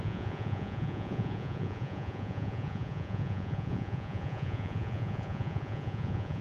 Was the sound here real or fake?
fake